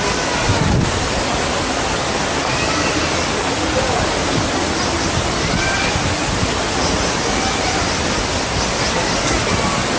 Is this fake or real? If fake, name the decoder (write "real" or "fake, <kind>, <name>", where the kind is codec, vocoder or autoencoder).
real